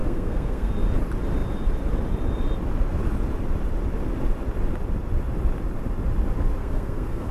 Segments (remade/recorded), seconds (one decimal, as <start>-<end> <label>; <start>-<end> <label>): 0.0-0.7 remade; 0.7-6.6 recorded; 6.6-7.3 remade